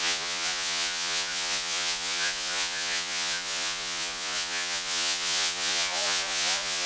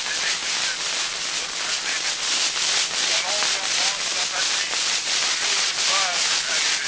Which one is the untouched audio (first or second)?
second